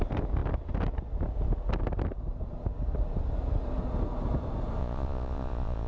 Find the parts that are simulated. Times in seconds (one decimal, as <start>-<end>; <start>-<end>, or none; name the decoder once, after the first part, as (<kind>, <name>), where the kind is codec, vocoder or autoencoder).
4.8-5.9 (vocoder, Vocos)